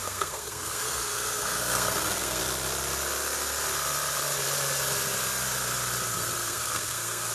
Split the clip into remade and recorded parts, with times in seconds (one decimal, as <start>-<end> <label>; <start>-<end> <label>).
0.0-2.4 remade; 2.4-6.1 recorded; 6.1-7.3 remade